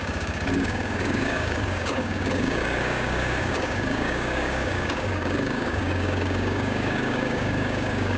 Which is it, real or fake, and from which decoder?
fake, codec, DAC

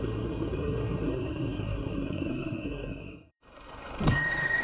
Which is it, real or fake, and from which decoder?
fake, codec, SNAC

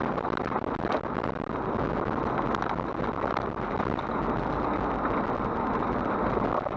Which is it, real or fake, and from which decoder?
real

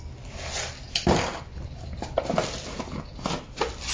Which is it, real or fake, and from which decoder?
real